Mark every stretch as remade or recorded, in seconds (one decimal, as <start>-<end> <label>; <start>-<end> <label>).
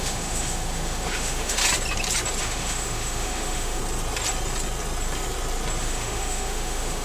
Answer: 0.0-1.6 remade; 1.6-2.4 recorded; 2.4-3.8 remade; 3.8-5.8 recorded; 5.8-7.0 remade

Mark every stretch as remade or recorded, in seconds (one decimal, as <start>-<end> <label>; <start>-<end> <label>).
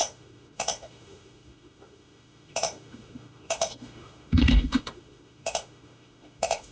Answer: 0.0-6.7 remade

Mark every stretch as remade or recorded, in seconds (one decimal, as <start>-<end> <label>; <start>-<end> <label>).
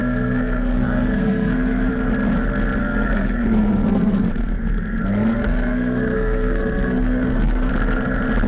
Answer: 0.0-1.9 remade; 1.9-2.8 recorded; 2.8-7.7 remade; 7.7-8.5 recorded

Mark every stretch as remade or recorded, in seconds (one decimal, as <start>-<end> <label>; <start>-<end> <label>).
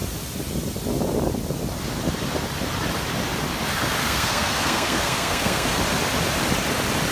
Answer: 0.0-4.0 recorded; 4.0-5.8 remade; 5.8-7.1 recorded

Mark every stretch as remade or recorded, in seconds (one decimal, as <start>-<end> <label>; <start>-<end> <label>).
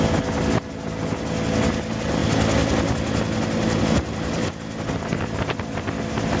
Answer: 0.0-6.4 recorded